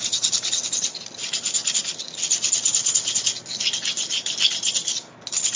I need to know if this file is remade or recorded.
recorded